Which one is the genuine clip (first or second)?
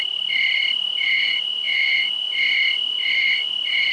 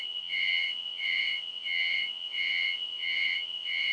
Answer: first